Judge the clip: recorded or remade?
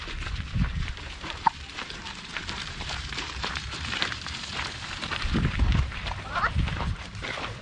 remade